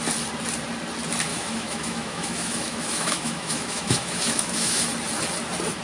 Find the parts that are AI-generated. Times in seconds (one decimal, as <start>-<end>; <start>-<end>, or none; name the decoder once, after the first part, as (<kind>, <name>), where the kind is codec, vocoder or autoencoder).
1.3-4.8 (autoencoder, DAC-VAE)